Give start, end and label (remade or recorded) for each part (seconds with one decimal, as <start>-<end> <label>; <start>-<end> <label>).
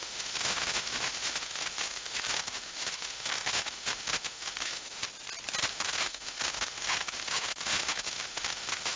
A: 0.0-5.0 remade; 5.0-5.7 recorded; 5.7-9.0 remade